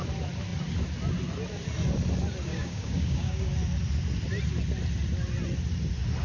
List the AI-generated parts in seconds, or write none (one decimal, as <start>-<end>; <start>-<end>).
2.5-3.5